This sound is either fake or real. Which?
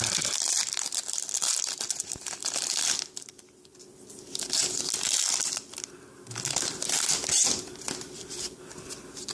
real